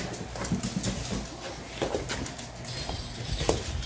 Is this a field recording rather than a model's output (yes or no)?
yes